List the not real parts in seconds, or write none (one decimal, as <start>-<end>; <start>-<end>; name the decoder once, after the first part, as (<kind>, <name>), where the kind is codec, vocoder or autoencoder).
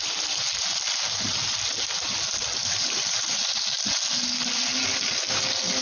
none